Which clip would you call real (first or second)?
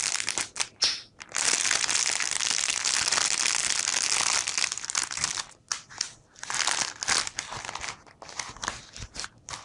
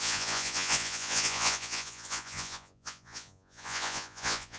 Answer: first